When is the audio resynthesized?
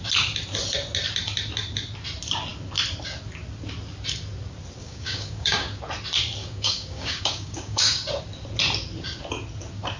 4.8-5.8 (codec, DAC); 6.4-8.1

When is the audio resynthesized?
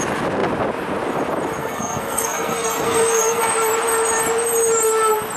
1.6-3.4 (codec, SNAC)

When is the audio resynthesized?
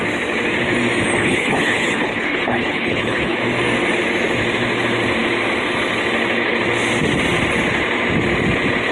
1.2-3.4 (codec, HILCodec)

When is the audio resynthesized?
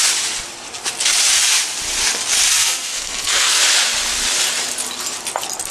2.5-3.6 (codec, SNAC)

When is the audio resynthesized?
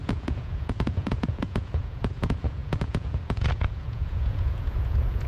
0.0-5.3 (vocoder, Vocos)